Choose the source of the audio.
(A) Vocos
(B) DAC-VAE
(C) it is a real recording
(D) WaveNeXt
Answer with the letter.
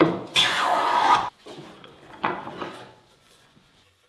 A